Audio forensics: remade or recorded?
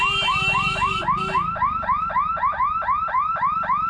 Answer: recorded